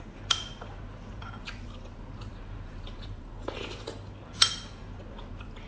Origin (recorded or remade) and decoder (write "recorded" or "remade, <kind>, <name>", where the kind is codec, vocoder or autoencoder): recorded